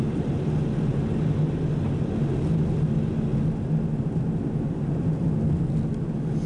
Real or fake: real